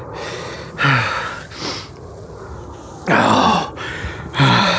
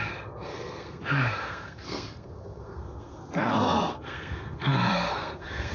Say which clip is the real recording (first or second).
first